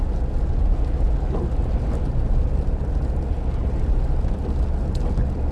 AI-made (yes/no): no